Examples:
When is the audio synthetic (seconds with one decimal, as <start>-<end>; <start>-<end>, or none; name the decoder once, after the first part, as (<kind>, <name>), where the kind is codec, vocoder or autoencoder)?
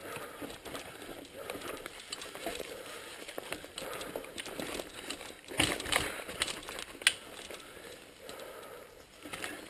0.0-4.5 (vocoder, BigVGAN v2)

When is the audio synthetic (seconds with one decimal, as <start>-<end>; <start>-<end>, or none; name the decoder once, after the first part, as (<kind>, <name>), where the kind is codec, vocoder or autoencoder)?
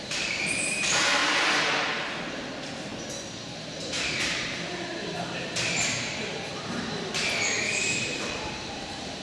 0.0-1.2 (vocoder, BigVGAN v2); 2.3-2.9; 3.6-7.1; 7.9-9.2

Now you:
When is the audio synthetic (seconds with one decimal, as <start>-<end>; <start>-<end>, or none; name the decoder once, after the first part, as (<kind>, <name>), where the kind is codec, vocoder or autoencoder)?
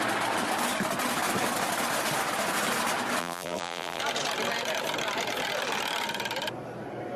3.2-4.0 (vocoder, BigVGAN v2)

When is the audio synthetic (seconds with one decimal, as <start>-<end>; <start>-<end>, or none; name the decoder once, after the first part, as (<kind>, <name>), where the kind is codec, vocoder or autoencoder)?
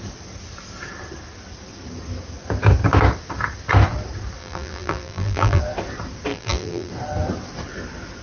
4.4-5.6 (vocoder, BigVGAN v2); 6.3-6.9